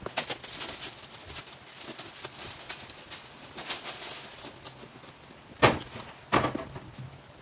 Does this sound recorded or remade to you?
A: recorded